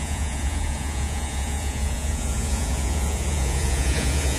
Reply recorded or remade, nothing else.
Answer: remade